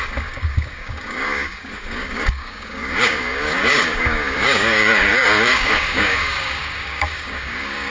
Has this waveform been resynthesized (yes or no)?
yes